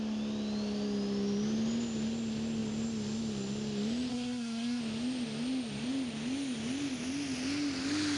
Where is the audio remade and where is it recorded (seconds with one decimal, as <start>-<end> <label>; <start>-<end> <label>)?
0.0-4.1 recorded; 4.1-4.8 remade; 4.8-8.2 recorded